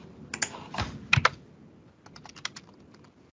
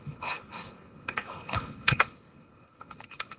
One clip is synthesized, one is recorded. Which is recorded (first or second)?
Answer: first